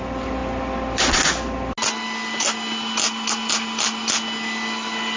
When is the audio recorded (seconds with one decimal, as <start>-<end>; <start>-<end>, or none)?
0.0-5.2